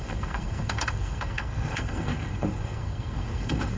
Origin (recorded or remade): remade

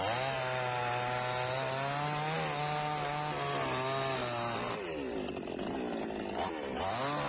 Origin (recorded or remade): recorded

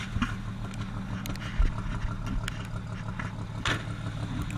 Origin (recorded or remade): recorded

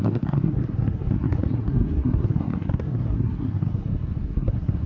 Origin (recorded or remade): remade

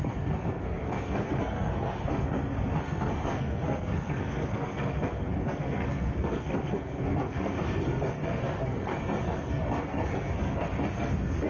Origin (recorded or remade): remade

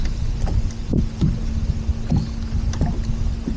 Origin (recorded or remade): recorded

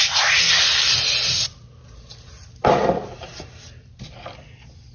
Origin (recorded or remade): recorded